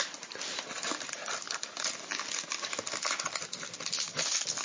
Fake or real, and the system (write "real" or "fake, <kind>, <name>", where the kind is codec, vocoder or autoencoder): real